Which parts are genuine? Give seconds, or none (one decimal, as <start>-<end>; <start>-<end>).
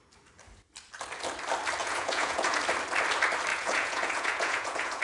0.0-1.8; 2.6-3.5